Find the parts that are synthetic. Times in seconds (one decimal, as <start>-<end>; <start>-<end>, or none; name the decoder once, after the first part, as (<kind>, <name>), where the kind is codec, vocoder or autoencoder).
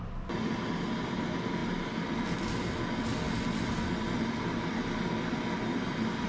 none